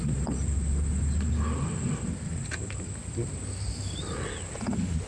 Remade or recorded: recorded